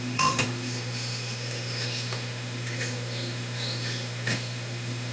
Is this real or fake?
fake